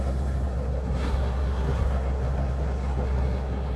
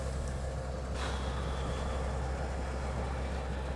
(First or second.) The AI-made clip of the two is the first